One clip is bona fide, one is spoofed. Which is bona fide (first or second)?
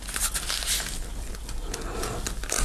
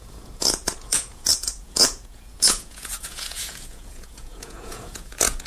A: first